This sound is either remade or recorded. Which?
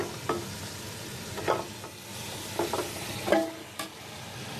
recorded